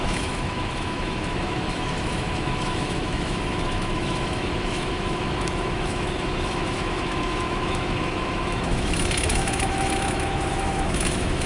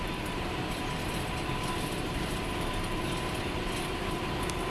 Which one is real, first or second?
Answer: second